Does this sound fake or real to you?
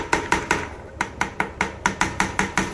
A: real